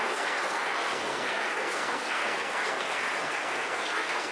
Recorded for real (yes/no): no